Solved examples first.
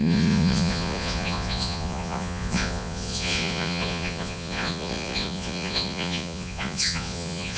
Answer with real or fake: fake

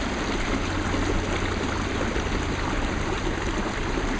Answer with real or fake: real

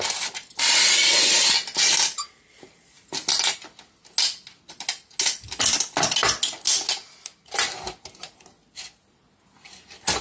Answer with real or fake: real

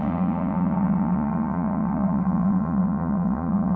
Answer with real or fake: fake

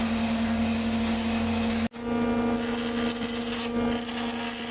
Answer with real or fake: real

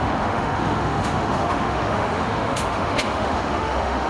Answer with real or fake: fake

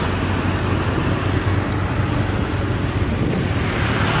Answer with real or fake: real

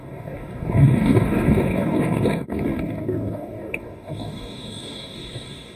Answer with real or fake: fake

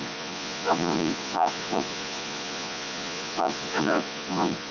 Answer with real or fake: fake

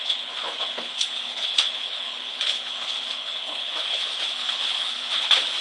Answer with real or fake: fake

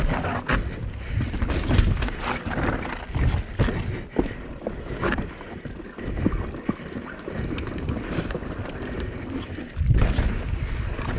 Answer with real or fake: real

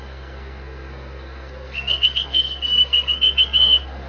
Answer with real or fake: fake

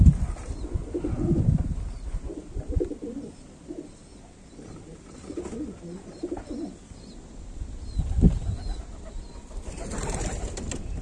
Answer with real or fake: real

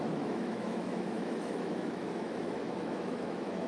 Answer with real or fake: fake